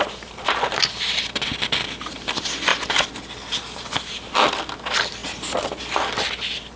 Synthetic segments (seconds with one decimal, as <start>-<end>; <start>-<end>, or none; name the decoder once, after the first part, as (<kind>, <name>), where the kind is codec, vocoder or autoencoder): 0.0-5.2 (vocoder, BigVGAN v2); 5.8-6.8